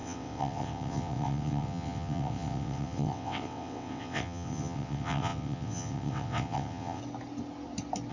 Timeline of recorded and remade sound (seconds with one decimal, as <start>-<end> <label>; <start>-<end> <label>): 0.0-7.0 remade; 7.0-8.1 recorded